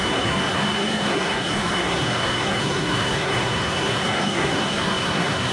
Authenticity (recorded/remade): remade